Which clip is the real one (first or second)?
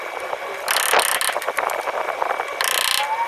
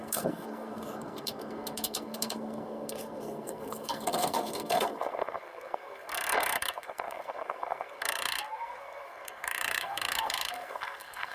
first